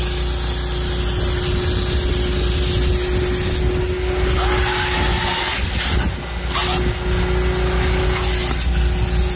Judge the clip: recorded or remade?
recorded